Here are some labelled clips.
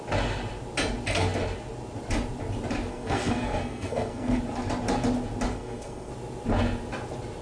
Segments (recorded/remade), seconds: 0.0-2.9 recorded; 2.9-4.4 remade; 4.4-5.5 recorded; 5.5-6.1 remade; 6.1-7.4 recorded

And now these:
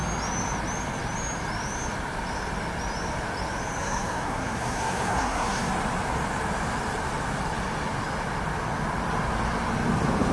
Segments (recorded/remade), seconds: 0.0-3.8 recorded; 3.8-5.7 remade; 5.7-10.3 recorded